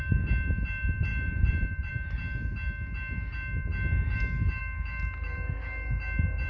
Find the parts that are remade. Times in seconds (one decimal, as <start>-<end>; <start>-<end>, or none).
1.1-1.9